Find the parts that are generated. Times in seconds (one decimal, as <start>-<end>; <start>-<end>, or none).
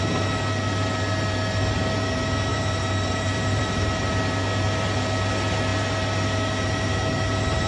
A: 2.5-4.1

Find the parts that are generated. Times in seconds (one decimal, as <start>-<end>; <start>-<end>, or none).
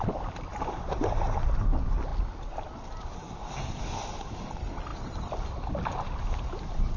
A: 0.5-1.6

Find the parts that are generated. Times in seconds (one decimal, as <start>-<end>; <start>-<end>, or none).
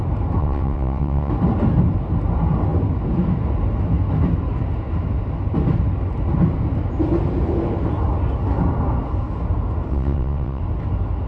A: 0.4-1.3; 9.9-10.6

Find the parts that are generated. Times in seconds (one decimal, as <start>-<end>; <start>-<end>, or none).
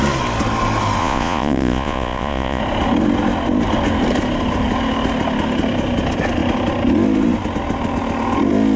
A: 1.0-2.6